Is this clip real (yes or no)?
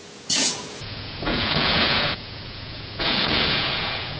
no